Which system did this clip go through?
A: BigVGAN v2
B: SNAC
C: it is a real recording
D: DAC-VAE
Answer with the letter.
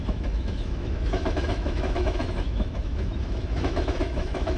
D